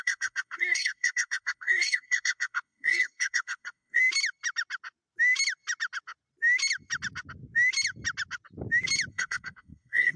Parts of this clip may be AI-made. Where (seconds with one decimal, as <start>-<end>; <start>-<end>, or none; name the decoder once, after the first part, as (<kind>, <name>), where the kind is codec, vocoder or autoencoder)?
0.0-4.0 (codec, SNAC); 9.1-10.2